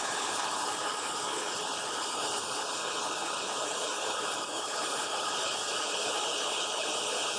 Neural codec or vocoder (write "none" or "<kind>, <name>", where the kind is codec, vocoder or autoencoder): codec, HILCodec